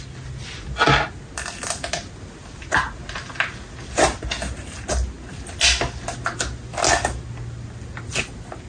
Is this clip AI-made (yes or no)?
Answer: no